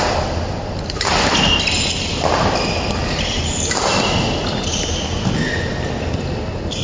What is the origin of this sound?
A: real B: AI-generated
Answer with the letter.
A